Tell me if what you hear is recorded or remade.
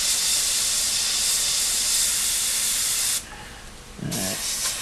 recorded